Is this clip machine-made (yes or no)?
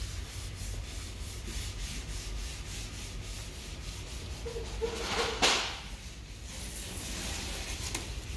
no